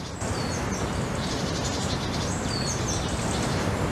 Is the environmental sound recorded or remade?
recorded